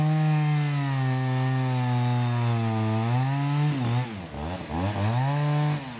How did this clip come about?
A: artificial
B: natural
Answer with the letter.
B